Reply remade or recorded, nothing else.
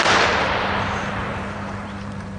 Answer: remade